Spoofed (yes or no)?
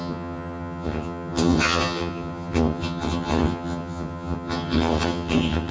yes